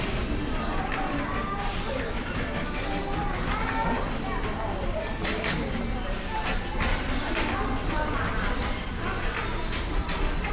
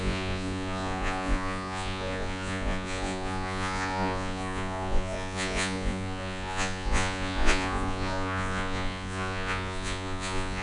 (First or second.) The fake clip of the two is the second